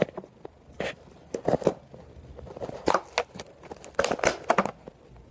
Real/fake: real